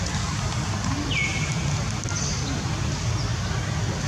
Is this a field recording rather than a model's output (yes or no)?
yes